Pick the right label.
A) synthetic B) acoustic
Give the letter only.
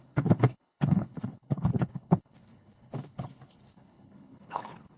A